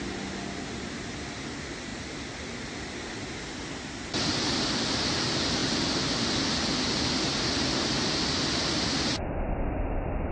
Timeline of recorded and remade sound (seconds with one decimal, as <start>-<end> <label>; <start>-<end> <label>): 0.0-10.3 recorded